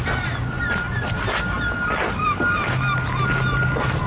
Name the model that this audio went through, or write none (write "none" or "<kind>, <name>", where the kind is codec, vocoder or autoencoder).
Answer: none